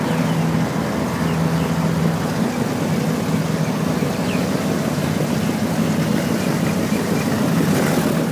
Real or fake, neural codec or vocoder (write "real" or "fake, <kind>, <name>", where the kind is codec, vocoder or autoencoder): real